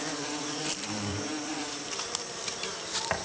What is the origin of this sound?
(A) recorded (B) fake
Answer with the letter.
B